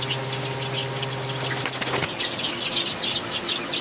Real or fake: real